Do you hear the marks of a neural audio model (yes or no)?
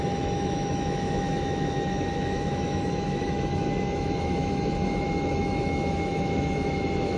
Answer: yes